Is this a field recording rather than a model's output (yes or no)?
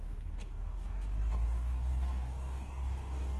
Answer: no